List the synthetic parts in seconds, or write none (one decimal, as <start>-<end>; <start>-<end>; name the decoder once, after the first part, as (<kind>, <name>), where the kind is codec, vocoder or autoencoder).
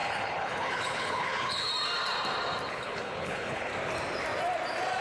0.0-1.7 (codec, HILCodec); 2.7-3.7